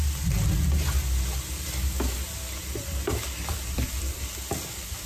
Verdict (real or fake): real